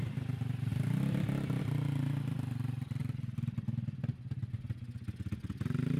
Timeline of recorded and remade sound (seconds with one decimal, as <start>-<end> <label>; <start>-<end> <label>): 0.0-0.7 recorded; 0.7-1.6 remade; 1.6-6.0 recorded